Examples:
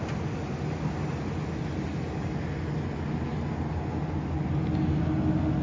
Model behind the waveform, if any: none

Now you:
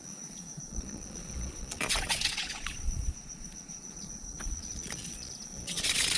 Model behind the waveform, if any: vocoder, Vocos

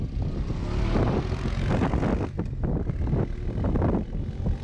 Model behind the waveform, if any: none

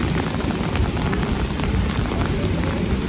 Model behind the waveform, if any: vocoder, BigVGAN v2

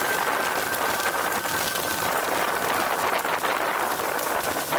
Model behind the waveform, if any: none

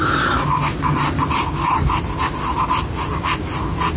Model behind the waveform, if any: none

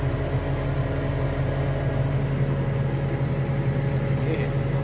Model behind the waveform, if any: none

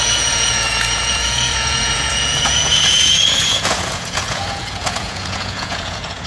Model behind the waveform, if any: vocoder, Vocos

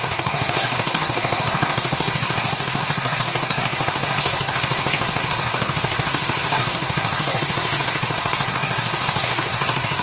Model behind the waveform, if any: codec, SNAC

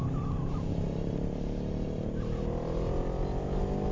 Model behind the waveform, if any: none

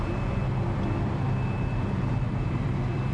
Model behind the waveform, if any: vocoder, BigVGAN v2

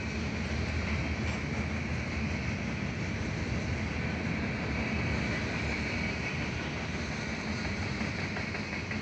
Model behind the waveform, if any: none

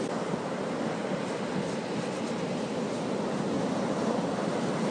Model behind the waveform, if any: none